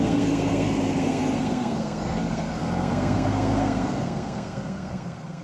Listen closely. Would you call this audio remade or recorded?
remade